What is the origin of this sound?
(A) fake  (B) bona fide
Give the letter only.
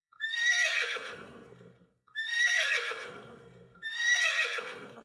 A